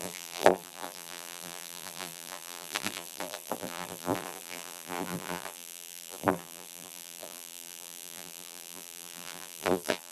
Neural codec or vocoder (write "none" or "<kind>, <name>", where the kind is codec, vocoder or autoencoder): vocoder, BigVGAN v2